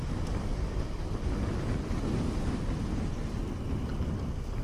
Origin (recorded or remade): recorded